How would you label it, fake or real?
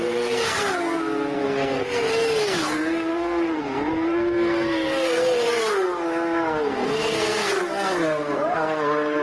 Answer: fake